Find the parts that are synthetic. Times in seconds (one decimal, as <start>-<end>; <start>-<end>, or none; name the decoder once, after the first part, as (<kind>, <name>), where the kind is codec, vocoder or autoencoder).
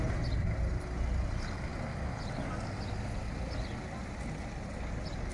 none